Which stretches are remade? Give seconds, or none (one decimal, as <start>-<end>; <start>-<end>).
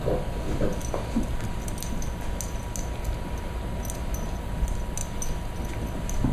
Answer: none